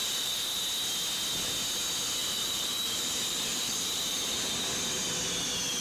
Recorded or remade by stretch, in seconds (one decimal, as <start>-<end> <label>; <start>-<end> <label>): 0.0-0.6 remade; 0.6-2.2 recorded; 2.2-4.5 remade; 4.5-5.8 recorded